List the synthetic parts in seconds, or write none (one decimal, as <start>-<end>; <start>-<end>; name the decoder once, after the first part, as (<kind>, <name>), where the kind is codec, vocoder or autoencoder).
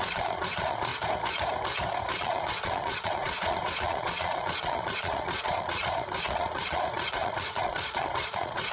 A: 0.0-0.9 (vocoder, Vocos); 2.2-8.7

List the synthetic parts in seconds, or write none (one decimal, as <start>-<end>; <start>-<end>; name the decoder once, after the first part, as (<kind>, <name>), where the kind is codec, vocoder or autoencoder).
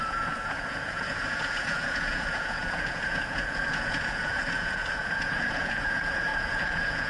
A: 0.0-7.1 (vocoder, Vocos)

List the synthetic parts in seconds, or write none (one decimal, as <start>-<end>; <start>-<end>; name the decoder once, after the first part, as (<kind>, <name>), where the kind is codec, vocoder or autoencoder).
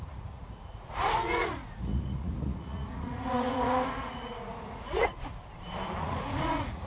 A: 0.0-5.3 (vocoder, Vocos); 6.0-6.9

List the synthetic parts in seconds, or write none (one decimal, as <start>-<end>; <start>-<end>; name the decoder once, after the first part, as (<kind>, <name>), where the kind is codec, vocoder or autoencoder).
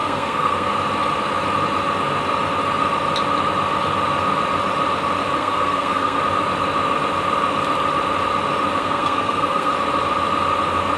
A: 0.0-0.7 (codec, SNAC); 5.4-6.2; 8.8-9.7